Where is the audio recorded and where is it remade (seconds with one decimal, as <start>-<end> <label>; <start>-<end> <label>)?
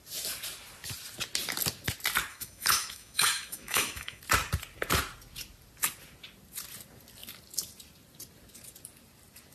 0.0-2.3 recorded; 2.3-4.2 remade; 4.2-9.5 recorded